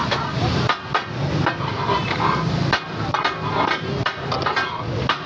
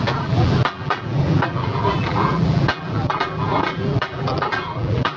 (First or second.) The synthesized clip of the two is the second